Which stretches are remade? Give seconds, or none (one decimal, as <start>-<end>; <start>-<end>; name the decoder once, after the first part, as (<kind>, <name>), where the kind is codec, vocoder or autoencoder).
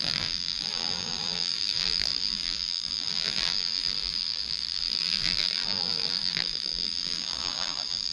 0.0-8.1 (vocoder, BigVGAN v2)